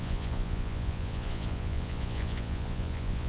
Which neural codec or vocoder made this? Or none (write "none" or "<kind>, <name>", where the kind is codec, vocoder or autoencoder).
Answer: vocoder, Vocos